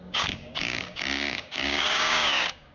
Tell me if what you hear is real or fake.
fake